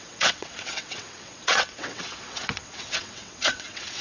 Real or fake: fake